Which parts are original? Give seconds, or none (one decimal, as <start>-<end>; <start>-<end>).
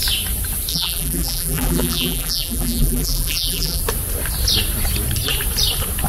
0.0-0.7; 3.8-6.1